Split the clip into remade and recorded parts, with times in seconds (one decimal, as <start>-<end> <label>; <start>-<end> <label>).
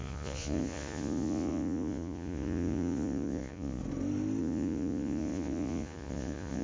0.0-3.8 remade; 3.8-4.4 recorded; 4.4-6.6 remade